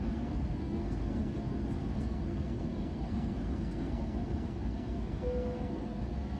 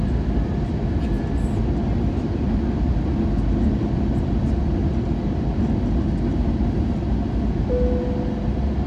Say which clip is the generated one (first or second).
first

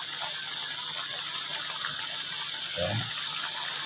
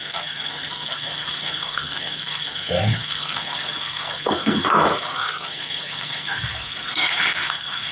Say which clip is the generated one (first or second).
second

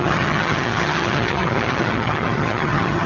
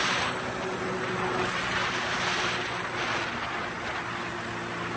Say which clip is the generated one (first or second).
first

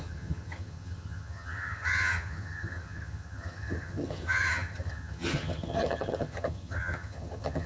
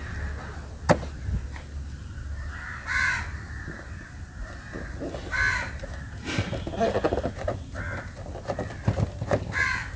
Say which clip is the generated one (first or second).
first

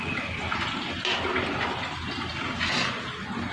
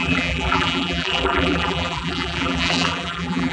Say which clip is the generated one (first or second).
second